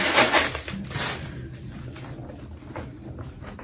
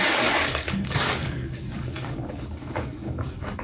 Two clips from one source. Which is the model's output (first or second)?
second